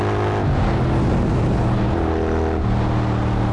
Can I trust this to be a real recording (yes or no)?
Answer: yes